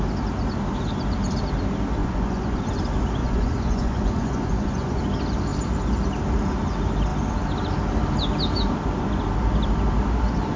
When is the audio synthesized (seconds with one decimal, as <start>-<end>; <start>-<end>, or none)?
2.0-2.6; 3.2-5.0